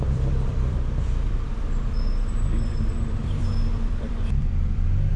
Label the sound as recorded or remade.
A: remade